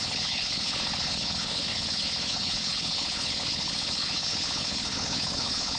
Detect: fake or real fake